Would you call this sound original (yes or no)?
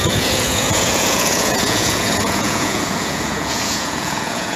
no